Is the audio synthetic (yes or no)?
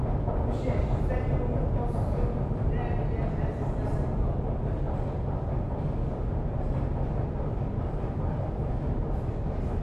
no